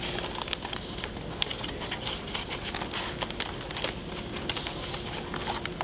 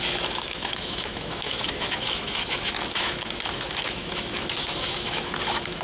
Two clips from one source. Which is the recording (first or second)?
first